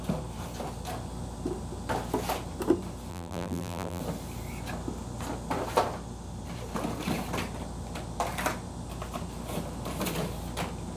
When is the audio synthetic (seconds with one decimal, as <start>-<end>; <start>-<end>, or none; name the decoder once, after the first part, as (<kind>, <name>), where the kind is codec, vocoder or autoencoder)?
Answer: 3.1-4.0 (vocoder, BigVGAN v2)

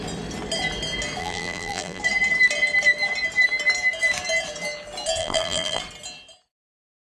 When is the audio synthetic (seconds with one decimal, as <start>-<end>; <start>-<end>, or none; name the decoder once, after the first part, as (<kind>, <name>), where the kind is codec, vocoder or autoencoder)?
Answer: 1.2-2.0 (vocoder, BigVGAN v2); 5.2-5.8

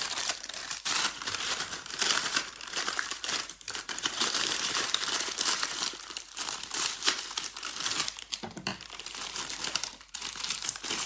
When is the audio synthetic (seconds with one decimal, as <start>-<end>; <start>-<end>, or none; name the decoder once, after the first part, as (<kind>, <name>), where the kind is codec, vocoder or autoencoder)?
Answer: 0.0-11.1 (vocoder, BigVGAN v2)

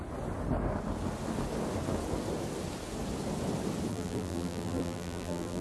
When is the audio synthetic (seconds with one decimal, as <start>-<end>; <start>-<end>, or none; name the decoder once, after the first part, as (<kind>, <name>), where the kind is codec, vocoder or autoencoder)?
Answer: 3.9-5.6 (vocoder, BigVGAN v2)

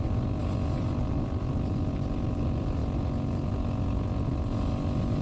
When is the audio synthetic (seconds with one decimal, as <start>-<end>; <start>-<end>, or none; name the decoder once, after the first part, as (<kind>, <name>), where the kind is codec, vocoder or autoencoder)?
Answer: none